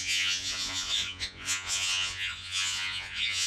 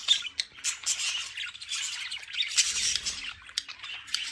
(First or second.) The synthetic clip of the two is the first